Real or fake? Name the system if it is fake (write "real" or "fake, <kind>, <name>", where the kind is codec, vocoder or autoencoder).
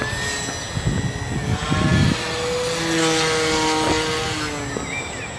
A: real